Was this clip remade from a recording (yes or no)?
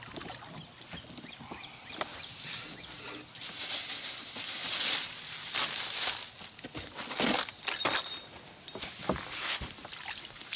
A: no